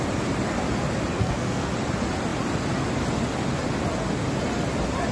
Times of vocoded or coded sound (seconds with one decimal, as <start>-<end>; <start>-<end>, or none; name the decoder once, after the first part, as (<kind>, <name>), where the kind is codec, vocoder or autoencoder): 1.2-1.7 (codec, SNAC)